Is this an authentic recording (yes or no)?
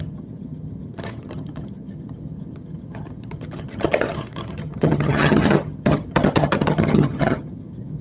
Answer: no